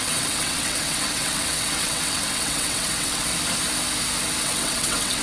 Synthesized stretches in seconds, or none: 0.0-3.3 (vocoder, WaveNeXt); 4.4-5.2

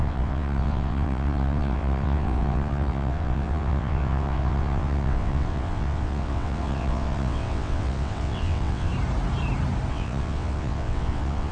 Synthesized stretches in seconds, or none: 0.0-8.9 (vocoder, WaveNeXt); 9.9-11.5

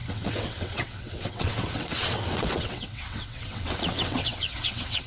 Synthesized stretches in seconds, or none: 0.0-5.1 (vocoder, WaveNeXt)